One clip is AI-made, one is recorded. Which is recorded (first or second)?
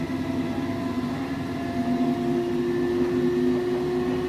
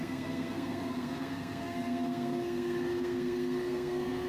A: first